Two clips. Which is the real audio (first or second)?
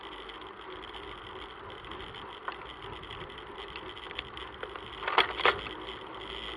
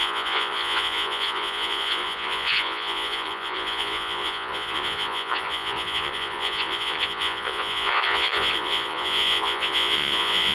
first